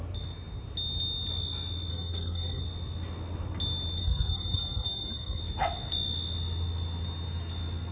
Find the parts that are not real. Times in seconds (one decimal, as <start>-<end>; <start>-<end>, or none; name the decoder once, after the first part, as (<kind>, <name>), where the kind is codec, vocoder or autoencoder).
1.9-2.6 (codec, SNAC); 4.0-5.4